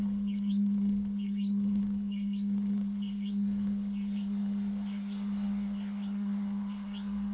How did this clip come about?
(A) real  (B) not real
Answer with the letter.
B